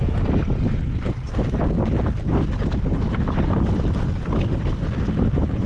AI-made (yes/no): yes